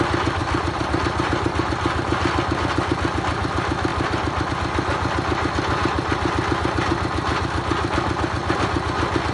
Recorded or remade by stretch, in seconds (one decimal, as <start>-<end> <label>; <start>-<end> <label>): 0.0-0.4 recorded; 0.4-1.0 remade; 1.0-3.9 recorded; 3.9-4.5 remade; 4.5-9.3 recorded